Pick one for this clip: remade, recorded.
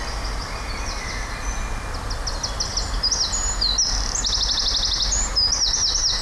recorded